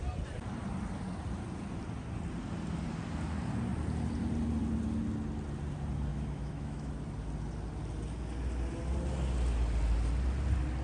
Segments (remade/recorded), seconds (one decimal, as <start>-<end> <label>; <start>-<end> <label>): 0.0-6.1 recorded; 6.1-6.9 remade; 6.9-10.8 recorded